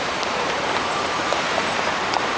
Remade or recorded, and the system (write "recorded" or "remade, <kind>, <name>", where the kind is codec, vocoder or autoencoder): remade, vocoder, BigVGAN v2